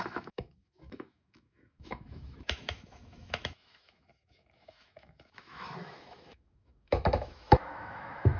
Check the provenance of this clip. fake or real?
fake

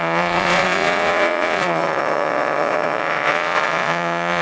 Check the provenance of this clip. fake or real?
fake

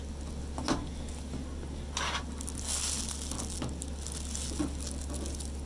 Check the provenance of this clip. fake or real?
real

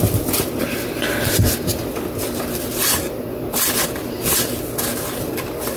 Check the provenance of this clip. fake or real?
real